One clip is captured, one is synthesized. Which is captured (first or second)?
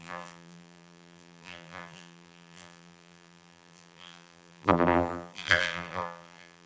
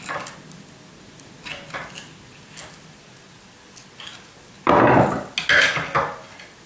second